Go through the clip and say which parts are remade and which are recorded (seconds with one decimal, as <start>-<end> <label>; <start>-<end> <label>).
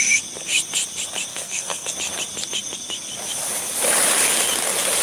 0.0-1.3 recorded; 1.3-1.9 remade; 1.9-5.0 recorded